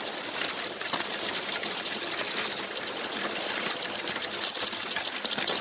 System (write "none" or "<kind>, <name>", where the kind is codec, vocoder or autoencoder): none